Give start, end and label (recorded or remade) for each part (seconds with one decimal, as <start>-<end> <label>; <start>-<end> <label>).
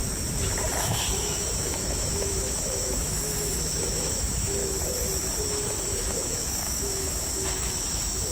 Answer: 0.0-0.8 recorded; 0.8-4.6 remade; 4.6-5.4 recorded; 5.4-8.3 remade